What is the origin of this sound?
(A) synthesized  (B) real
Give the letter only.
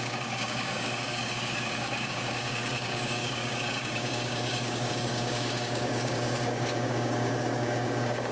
A